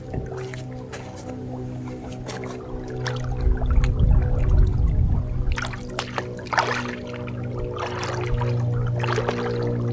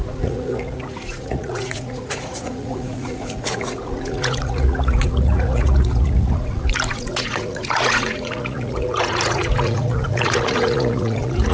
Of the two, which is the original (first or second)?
first